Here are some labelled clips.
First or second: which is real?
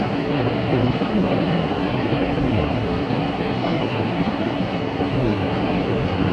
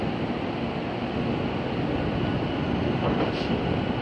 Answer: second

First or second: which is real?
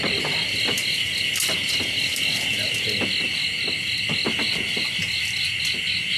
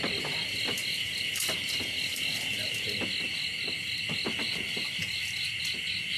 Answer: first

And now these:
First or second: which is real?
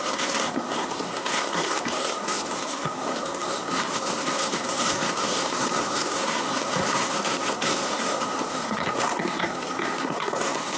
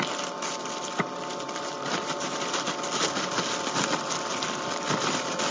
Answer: second